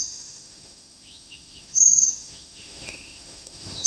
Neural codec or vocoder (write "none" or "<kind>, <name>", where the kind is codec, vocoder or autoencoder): autoencoder, DAC-VAE